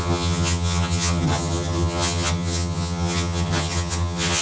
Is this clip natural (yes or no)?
no